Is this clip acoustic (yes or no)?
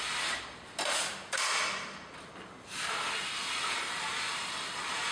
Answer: yes